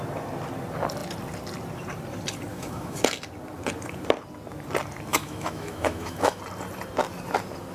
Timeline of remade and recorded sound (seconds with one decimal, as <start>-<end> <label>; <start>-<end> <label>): 0.0-2.5 recorded; 2.5-3.0 remade; 3.0-5.1 recorded; 5.1-6.4 remade; 6.4-7.7 recorded